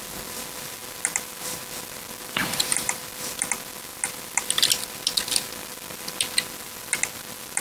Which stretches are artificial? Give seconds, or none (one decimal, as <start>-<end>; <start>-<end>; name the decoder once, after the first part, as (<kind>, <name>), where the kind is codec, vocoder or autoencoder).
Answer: 2.4-3.0 (vocoder, BigVGAN v2)